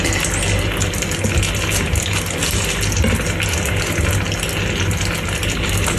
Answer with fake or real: real